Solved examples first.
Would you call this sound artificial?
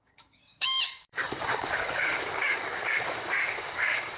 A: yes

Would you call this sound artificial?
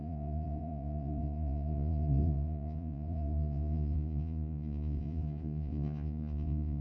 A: yes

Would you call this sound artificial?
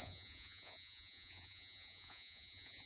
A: yes